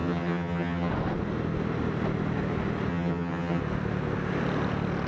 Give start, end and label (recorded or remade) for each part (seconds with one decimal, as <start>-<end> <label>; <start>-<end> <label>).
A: 0.0-0.9 remade; 0.9-2.9 recorded; 2.9-3.6 remade; 3.6-5.1 recorded

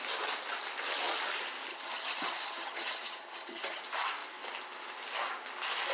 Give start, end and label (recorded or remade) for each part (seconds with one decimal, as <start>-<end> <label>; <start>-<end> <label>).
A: 0.0-1.7 recorded; 1.7-3.8 remade; 3.8-5.9 recorded

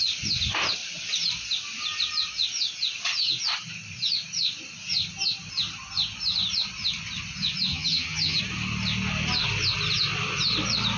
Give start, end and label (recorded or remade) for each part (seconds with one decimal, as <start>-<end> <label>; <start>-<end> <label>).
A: 0.0-7.7 recorded; 7.7-8.4 remade; 8.4-11.0 recorded

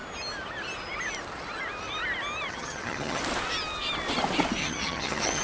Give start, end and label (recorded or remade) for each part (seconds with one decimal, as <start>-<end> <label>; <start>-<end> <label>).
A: 0.0-2.5 recorded; 2.5-3.2 remade; 3.2-4.6 recorded; 4.6-5.4 remade

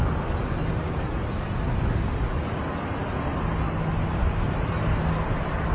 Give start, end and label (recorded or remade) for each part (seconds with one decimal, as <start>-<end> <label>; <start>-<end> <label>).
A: 0.0-5.7 recorded

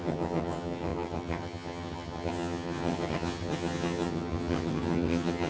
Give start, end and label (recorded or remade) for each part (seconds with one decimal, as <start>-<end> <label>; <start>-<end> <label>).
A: 0.0-5.5 remade